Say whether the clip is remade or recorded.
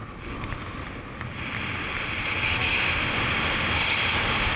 recorded